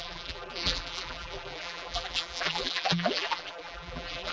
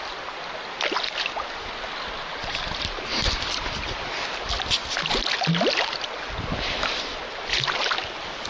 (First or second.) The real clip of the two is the second